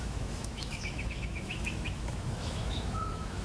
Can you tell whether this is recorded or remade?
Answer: remade